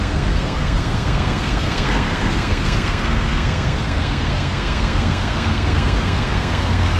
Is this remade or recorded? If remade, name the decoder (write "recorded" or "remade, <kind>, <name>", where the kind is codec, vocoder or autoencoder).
remade, codec, SNAC